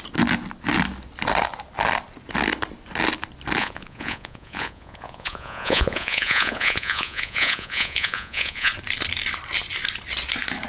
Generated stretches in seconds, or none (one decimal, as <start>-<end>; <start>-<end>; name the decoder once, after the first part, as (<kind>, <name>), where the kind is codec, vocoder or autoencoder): 3.6-8.7 (vocoder, Vocos)